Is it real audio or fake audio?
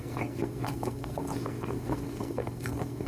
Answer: fake